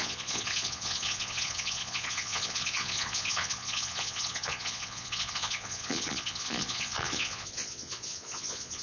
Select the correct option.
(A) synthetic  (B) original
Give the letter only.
A